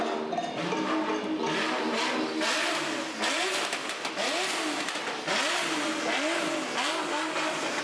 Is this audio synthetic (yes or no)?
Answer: no